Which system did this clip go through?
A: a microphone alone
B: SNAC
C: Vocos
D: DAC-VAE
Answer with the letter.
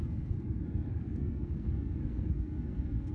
B